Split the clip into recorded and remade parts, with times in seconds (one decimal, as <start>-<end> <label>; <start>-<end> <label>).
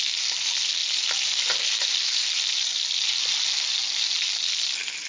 0.0-5.1 recorded